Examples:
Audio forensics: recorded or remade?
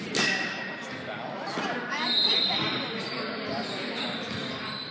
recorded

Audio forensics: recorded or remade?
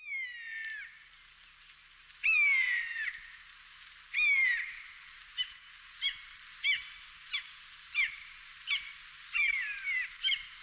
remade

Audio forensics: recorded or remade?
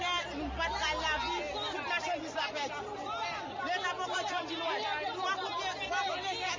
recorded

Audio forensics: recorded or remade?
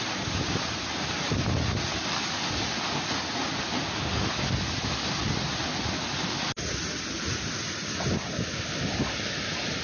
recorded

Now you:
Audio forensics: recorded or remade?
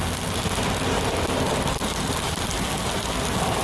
recorded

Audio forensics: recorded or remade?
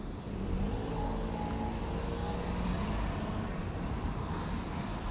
recorded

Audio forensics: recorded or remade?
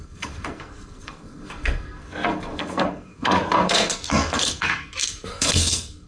remade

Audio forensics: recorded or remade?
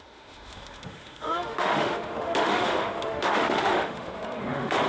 remade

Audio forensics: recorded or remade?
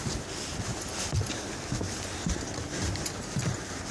recorded